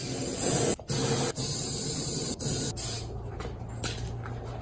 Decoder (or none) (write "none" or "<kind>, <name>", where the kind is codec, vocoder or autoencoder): none